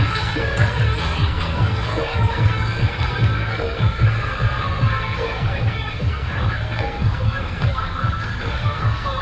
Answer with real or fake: fake